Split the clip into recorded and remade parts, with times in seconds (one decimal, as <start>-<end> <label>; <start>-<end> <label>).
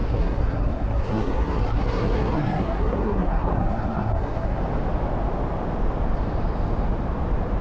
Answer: 0.0-4.6 remade; 4.6-7.6 recorded